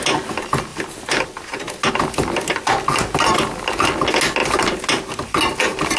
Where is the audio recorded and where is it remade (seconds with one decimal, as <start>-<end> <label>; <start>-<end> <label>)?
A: 0.0-6.0 recorded